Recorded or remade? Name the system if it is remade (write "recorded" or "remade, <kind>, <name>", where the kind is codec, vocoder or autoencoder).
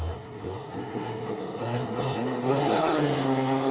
remade, codec, SNAC